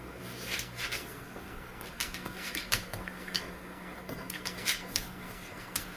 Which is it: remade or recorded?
remade